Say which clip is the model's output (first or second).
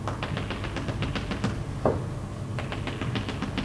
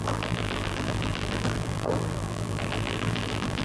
second